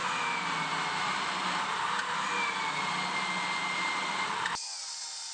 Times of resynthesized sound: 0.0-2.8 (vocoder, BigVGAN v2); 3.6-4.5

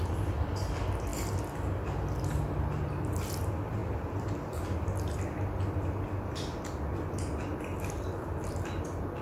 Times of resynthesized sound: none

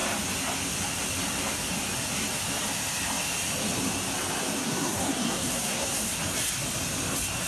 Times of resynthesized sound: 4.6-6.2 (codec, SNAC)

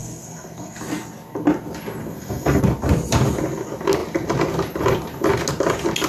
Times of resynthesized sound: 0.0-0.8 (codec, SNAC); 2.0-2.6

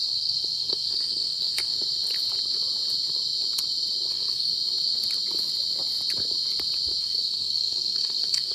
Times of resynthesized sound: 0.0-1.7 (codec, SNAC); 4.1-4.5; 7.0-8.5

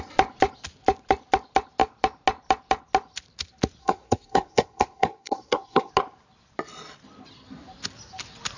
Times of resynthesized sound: 3.8-5.9 (codec, SNAC)